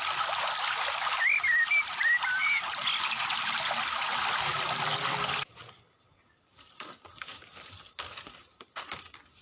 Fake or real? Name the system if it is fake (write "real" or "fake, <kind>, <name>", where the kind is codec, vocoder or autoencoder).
real